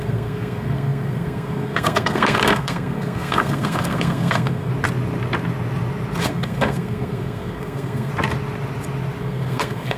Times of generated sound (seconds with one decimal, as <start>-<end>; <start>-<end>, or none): 0.0-4.7; 6.2-8.1; 9.2-10.0